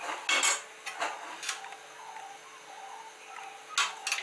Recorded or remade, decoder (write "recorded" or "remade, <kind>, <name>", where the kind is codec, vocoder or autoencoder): recorded